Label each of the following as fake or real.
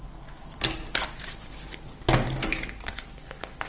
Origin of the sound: real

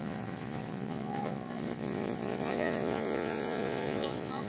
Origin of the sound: fake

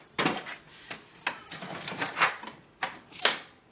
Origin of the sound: real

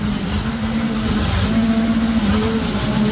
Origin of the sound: real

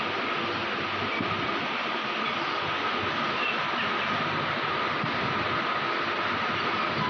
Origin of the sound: real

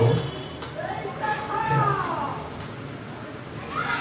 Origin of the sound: real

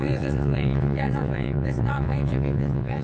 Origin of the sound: fake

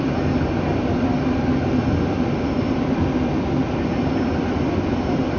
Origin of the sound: real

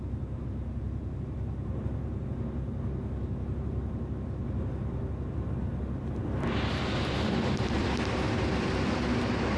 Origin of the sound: real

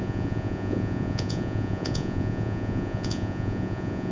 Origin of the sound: fake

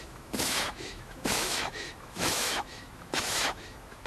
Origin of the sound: fake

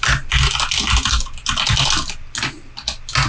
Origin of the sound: real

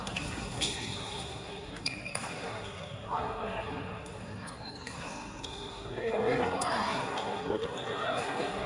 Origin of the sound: fake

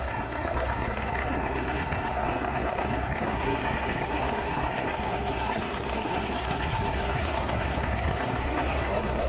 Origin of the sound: fake